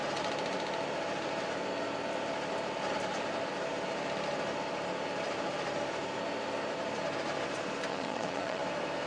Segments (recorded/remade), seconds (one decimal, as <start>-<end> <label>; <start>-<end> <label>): 0.0-7.9 recorded; 7.9-8.6 remade; 8.6-9.1 recorded